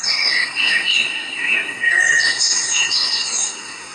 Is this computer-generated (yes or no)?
yes